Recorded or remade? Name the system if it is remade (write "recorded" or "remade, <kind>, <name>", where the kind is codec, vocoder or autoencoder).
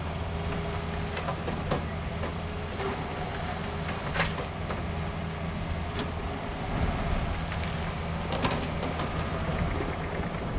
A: recorded